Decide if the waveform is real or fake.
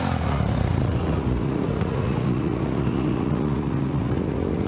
fake